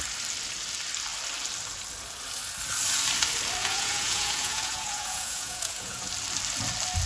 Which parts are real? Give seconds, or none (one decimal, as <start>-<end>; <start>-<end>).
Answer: 0.0-3.6; 6.1-7.1